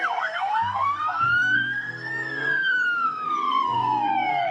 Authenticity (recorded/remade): remade